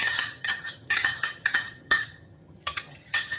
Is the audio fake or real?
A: fake